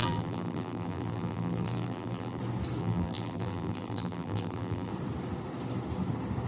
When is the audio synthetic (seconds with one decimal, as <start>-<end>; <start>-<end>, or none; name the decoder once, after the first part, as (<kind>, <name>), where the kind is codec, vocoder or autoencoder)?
0.0-2.4 (vocoder, BigVGAN v2); 2.8-4.9